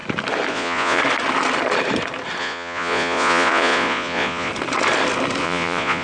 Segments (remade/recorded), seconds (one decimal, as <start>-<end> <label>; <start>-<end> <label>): 0.0-0.5 recorded; 0.5-1.0 remade; 1.0-2.4 recorded; 2.4-4.5 remade; 4.5-5.4 recorded; 5.4-6.0 remade